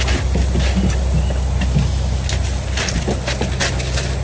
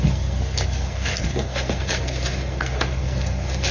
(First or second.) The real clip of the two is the first